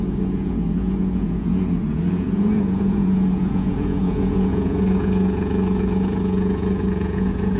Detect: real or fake fake